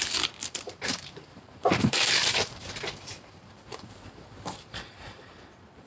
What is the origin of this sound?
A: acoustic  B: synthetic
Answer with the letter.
B